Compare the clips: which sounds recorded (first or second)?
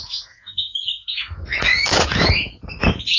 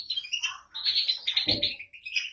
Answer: second